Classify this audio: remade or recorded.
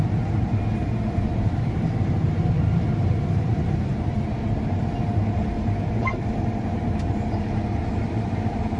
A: remade